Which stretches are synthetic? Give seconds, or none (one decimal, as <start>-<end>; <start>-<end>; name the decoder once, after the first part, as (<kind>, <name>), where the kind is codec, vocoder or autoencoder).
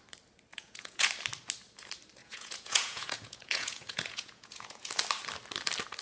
0.5-1.1 (vocoder, Vocos); 2.2-4.9